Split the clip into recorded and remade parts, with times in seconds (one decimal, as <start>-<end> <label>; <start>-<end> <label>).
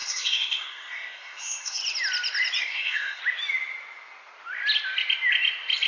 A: 0.0-1.8 remade; 1.8-2.6 recorded; 2.6-3.2 remade; 3.2-5.9 recorded